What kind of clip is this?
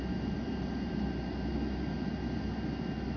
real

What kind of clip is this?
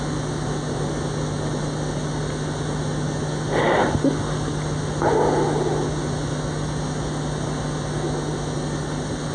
real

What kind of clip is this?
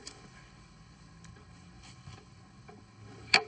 fake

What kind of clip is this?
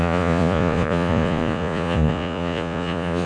fake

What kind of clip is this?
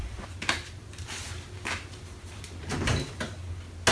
real